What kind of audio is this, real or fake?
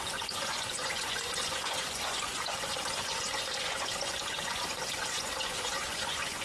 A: fake